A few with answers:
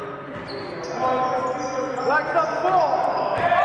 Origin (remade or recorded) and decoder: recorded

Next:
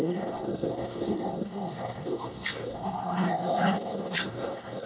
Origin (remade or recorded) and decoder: remade, codec, SNAC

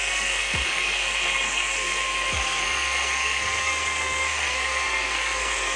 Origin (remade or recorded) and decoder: remade, codec, SNAC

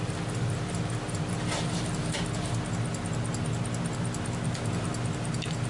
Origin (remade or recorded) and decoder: recorded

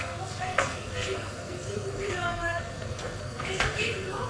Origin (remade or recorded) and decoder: remade, codec, SNAC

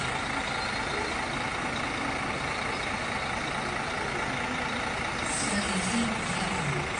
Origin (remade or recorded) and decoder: recorded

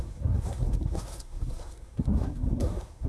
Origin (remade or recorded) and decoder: remade, codec, SNAC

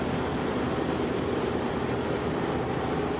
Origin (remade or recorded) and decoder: recorded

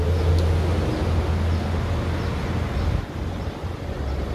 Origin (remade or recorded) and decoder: recorded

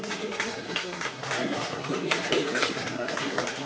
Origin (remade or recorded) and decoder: remade, codec, SNAC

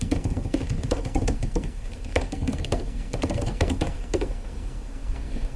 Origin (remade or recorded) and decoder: remade, codec, SNAC